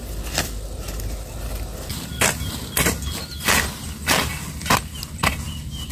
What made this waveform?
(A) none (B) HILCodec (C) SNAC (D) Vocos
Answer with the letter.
A